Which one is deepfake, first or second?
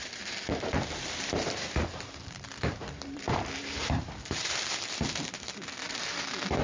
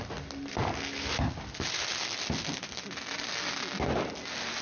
first